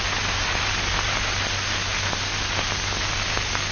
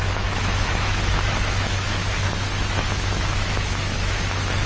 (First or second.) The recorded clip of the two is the first